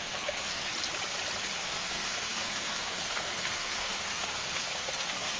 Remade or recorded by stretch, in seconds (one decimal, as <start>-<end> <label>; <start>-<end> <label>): 0.0-0.7 remade; 0.7-1.6 recorded; 1.6-5.4 remade